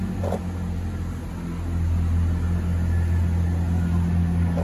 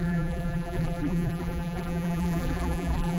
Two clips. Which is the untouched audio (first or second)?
first